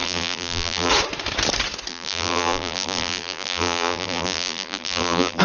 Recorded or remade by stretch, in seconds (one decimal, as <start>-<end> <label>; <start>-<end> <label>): 0.0-0.9 remade; 0.9-1.9 recorded; 1.9-5.4 remade